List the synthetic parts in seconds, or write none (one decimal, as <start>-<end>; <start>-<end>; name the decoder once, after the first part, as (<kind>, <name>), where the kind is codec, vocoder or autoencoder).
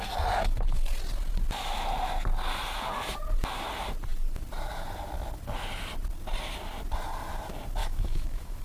7.8-8.6 (autoencoder, DAC-VAE)